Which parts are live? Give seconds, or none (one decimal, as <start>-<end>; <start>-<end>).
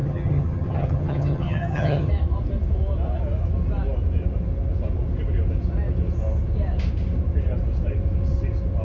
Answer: 2.1-8.8